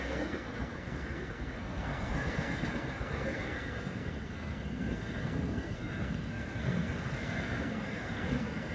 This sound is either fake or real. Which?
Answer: fake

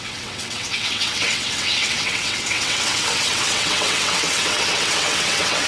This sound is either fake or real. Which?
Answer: fake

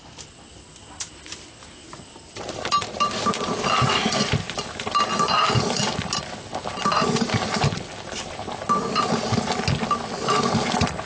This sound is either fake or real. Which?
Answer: real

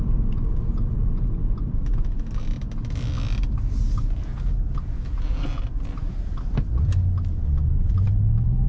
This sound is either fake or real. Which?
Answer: real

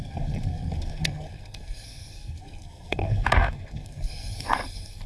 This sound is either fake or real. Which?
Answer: fake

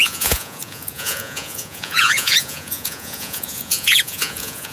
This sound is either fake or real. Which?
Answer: fake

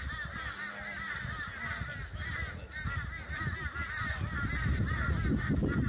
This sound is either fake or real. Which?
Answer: real